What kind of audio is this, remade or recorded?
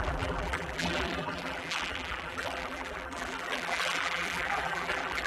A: remade